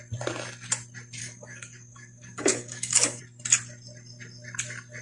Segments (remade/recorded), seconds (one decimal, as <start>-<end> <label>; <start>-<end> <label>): 0.0-1.2 recorded; 1.2-3.2 remade; 3.2-5.0 recorded